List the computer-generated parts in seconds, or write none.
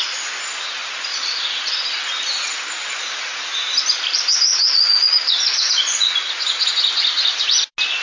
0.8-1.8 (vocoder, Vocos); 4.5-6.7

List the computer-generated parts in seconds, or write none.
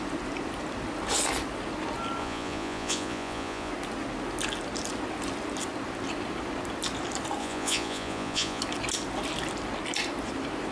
2.2-3.7 (vocoder, Vocos); 7.4-8.6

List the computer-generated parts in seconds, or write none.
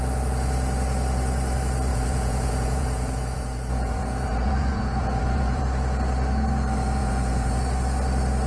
1.9-5.6 (vocoder, Vocos); 7.0-7.6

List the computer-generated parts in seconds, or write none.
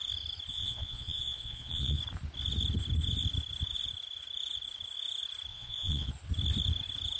0.5-2.0 (vocoder, Vocos); 5.5-6.1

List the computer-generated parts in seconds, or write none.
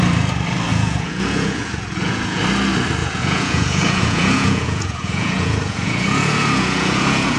0.7-2.4 (vocoder, Vocos); 3.0-7.4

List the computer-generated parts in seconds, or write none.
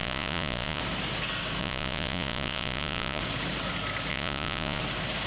0.0-0.8 (vocoder, Vocos); 1.6-3.2; 4.1-4.8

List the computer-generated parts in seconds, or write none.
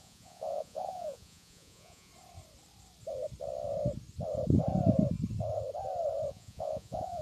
0.0-2.1 (vocoder, Vocos); 6.3-7.2